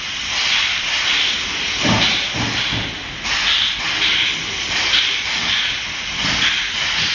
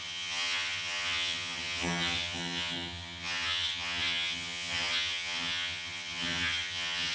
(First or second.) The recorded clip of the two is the first